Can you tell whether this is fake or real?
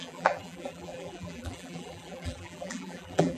fake